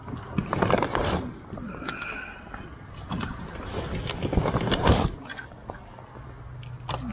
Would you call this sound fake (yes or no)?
no